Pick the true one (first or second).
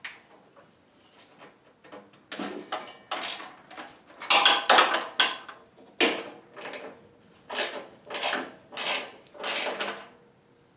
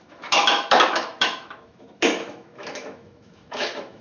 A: first